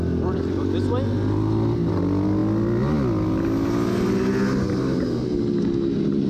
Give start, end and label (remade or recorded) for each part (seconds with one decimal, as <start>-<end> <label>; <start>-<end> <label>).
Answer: 0.0-6.3 recorded